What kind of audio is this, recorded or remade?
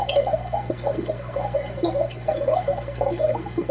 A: remade